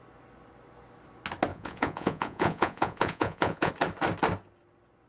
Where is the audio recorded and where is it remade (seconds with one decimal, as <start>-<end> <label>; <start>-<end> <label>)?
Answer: 0.0-1.5 recorded; 1.5-3.7 remade; 3.7-5.1 recorded

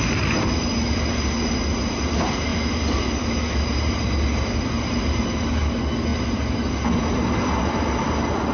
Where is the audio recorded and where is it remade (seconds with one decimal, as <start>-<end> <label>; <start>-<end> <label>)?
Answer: 0.0-8.5 recorded

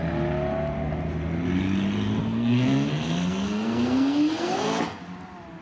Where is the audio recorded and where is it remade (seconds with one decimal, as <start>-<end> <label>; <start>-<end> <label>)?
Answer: 0.0-2.2 recorded; 2.2-5.0 remade; 5.0-5.6 recorded

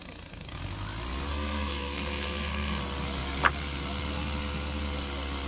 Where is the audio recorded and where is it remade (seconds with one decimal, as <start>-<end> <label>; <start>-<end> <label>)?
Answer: 0.0-1.3 recorded; 1.3-2.8 remade; 2.8-5.5 recorded

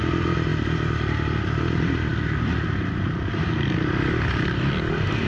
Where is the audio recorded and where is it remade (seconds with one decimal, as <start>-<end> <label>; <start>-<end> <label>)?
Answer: 0.0-5.3 recorded

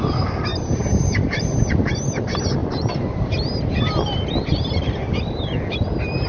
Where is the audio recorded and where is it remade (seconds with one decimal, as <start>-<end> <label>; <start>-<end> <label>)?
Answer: 0.0-0.5 recorded; 0.5-1.5 remade; 1.5-2.6 recorded; 2.6-5.1 remade; 5.1-6.3 recorded